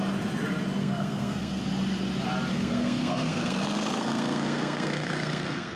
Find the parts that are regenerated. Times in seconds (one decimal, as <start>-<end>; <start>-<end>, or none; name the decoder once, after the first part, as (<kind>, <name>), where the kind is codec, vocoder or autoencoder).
0.8-1.6 (codec, SNAC); 2.5-5.8